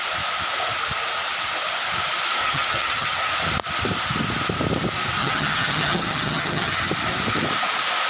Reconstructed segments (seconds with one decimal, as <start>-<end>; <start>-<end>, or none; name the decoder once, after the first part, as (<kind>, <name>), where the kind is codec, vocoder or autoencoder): 2.4-3.3 (vocoder, HiFi-GAN); 5.2-6.9